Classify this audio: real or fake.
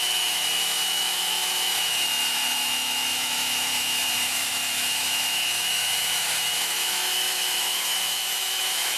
fake